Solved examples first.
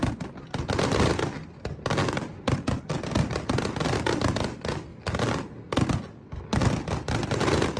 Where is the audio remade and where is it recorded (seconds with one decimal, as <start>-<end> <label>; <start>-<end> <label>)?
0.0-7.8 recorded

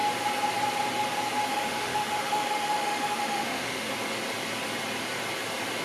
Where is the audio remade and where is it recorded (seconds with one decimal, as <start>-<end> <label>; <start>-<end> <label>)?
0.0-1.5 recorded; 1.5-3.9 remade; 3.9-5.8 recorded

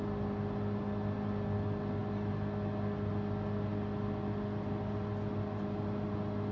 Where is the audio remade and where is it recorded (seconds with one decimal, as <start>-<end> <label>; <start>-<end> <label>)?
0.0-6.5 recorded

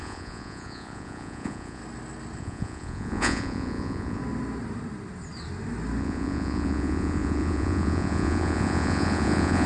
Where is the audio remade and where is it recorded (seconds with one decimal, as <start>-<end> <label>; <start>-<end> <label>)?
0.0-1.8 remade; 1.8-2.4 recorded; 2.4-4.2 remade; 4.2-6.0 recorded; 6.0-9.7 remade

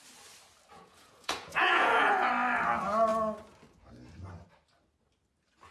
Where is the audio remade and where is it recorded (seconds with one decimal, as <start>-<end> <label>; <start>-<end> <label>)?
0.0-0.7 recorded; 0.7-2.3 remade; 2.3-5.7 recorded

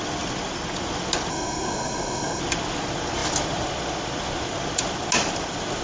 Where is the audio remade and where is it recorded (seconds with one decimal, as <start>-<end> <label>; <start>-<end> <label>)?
0.0-1.3 recorded; 1.3-2.4 remade; 2.4-5.8 recorded

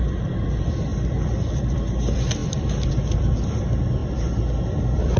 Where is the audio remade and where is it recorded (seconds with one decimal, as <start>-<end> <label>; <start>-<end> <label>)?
0.0-5.2 remade